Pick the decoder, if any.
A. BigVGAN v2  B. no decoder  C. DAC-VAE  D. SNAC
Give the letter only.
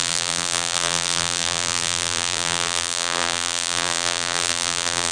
A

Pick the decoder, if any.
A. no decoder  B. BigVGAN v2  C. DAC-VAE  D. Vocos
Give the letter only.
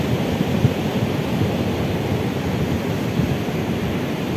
A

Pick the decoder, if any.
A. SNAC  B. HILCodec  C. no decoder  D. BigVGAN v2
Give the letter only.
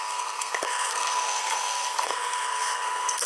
A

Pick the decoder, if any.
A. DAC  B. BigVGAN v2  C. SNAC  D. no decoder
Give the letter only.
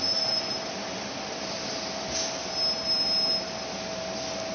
D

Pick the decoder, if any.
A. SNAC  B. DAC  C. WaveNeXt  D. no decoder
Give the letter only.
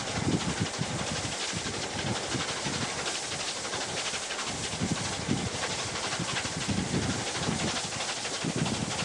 D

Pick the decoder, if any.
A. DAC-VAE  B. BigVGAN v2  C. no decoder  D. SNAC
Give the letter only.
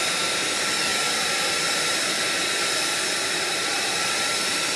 C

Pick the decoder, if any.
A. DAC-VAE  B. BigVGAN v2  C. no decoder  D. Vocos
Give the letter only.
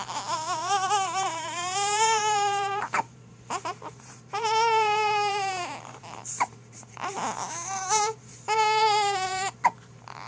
B